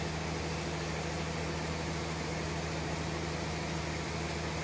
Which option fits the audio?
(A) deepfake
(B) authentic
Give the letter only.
B